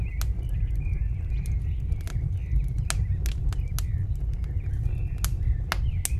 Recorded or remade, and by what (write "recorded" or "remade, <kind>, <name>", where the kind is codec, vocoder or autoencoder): recorded